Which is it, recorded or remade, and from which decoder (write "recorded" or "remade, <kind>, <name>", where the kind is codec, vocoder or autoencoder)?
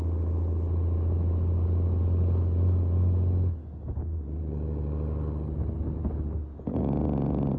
recorded